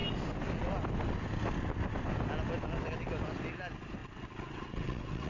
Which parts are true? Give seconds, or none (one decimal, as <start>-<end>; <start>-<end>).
0.0-4.0